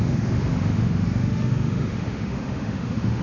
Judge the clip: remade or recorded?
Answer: remade